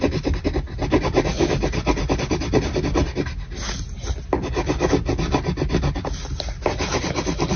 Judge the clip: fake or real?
real